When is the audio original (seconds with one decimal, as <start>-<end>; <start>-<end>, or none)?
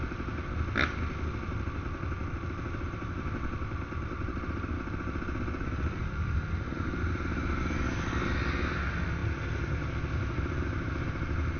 none